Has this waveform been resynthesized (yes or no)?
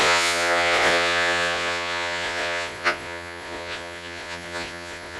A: yes